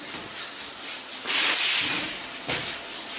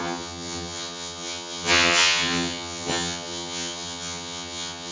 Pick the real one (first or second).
first